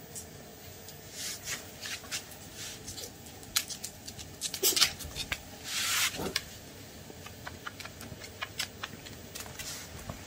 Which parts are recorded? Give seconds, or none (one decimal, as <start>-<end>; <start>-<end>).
0.0-4.8; 8.0-10.3